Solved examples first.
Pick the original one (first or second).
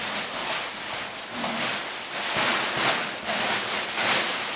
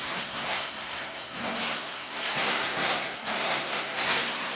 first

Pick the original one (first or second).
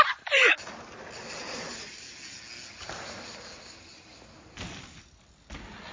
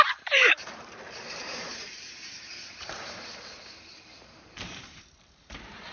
first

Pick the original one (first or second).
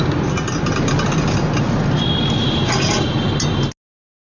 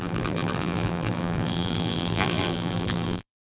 first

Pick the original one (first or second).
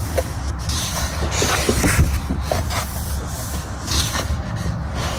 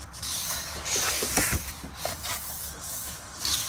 first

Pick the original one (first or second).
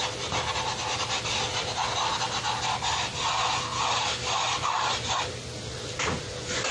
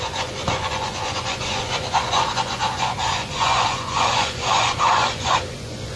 first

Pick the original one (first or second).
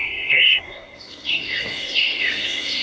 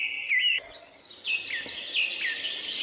second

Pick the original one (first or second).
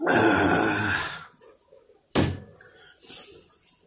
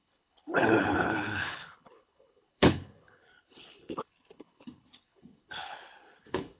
first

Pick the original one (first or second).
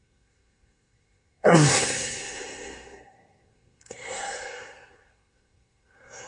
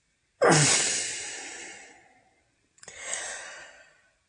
second